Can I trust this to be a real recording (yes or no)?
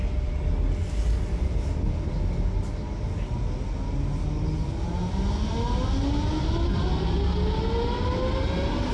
yes